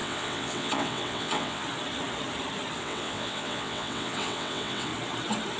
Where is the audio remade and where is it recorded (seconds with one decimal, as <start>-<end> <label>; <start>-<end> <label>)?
0.0-1.6 remade; 1.6-2.8 recorded; 2.8-4.9 remade; 4.9-5.6 recorded